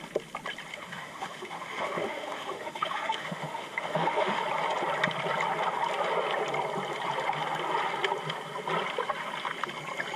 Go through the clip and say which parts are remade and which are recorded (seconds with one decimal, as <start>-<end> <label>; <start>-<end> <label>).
0.0-0.7 recorded; 0.7-4.4 remade; 4.4-10.2 recorded